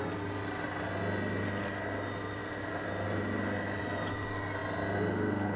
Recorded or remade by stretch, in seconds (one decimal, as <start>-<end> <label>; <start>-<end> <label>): 0.0-5.6 recorded